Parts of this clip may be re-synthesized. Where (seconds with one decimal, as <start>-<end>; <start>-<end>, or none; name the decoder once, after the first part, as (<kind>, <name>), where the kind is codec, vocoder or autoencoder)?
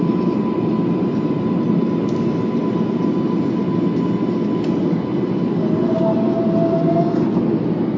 none